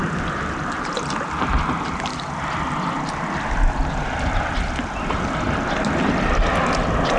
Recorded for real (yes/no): yes